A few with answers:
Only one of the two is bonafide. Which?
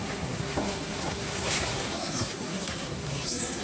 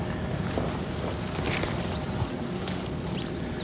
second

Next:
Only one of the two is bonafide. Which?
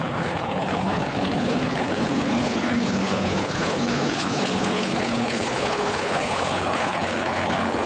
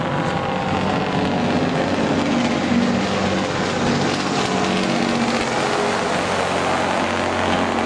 second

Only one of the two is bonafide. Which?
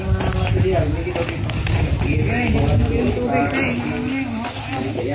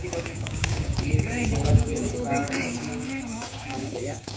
first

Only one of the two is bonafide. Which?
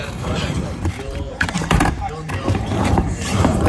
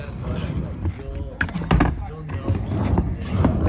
second